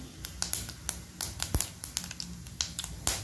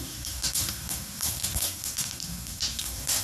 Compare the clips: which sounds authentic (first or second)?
first